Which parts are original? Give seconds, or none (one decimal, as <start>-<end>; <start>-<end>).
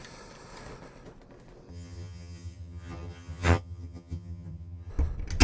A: 0.0-1.7; 4.9-5.4